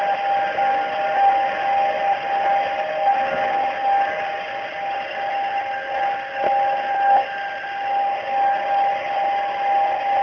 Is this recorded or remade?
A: recorded